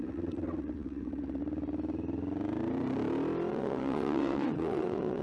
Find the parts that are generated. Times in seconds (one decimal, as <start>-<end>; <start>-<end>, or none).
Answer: 0.0-1.4; 3.5-5.2